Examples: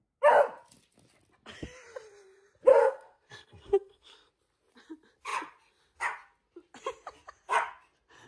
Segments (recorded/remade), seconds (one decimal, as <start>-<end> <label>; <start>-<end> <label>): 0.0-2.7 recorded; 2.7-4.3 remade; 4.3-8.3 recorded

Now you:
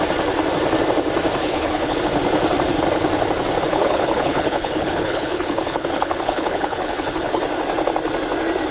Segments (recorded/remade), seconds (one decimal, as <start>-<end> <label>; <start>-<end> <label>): 0.0-1.4 recorded; 1.4-2.0 remade; 2.0-3.7 recorded; 3.7-7.4 remade; 7.4-8.7 recorded

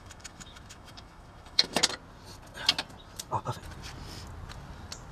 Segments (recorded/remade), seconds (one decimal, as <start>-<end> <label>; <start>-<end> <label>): 0.0-1.8 remade; 1.8-5.1 recorded

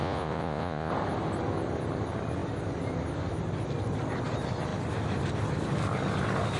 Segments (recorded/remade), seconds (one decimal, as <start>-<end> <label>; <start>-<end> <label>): 0.0-0.9 remade; 0.9-6.6 recorded

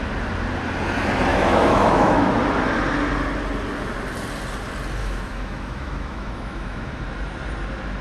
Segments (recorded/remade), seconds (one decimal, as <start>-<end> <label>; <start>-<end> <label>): 0.0-1.3 recorded; 1.3-2.3 remade; 2.3-5.0 recorded; 5.0-7.0 remade; 7.0-8.0 recorded

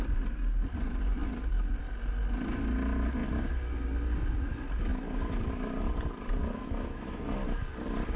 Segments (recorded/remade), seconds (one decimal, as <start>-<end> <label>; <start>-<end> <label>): 0.0-6.4 recorded; 6.4-7.2 remade; 7.2-8.2 recorded